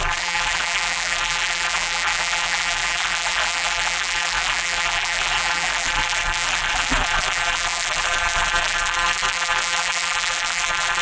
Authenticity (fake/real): fake